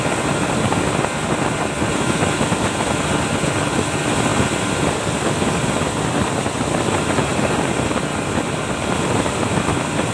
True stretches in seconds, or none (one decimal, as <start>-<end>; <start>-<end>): 0.0-7.3; 8.0-10.1